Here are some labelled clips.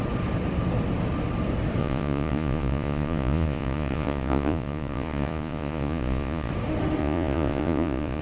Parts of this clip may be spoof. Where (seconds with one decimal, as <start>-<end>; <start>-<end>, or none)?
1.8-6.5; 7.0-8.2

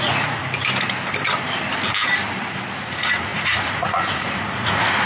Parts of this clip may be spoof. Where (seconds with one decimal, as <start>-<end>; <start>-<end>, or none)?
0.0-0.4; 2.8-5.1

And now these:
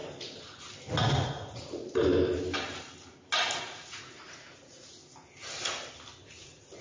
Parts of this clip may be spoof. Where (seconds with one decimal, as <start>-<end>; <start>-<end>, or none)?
1.0-1.8; 3.6-5.0; 6.2-6.8

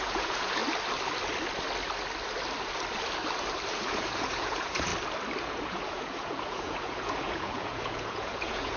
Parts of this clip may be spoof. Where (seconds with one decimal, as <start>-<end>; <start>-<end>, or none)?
0.0-0.6; 3.7-4.9; 5.4-8.8

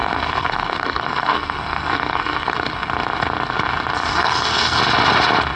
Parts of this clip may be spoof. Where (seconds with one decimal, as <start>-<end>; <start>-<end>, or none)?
0.0-2.9; 4.1-4.8